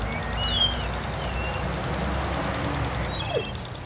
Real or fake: real